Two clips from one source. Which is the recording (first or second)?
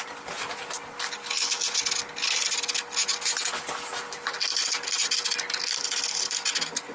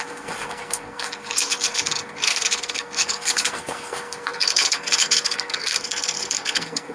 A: first